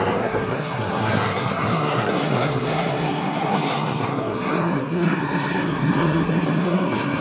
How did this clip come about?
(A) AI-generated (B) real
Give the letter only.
A